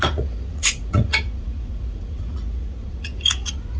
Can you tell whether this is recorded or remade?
remade